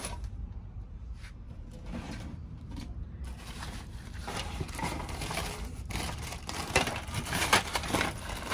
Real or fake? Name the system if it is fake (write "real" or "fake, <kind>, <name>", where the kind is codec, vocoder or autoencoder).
fake, vocoder, BigVGAN v2